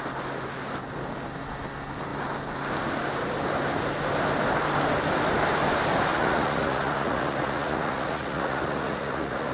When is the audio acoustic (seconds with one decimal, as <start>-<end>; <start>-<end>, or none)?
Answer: 0.0-6.1